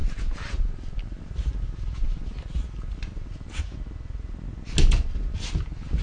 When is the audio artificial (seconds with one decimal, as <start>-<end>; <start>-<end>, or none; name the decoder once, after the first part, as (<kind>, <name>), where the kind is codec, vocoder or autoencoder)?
0.0-3.6 (vocoder, BigVGAN v2)